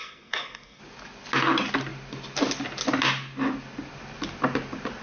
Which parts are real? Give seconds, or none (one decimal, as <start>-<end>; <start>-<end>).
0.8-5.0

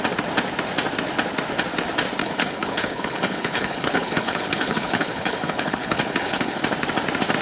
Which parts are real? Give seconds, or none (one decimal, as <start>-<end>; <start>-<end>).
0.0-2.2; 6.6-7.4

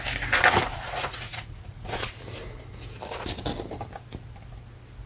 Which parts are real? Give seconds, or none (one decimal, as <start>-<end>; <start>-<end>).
0.0-0.7; 2.1-5.1

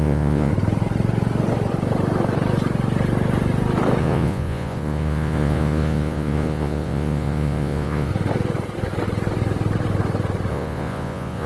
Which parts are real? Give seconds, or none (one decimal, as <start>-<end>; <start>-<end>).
0.5-4.0; 8.1-10.5